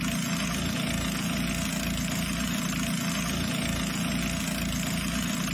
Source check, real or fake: real